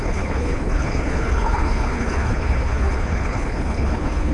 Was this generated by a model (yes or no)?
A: yes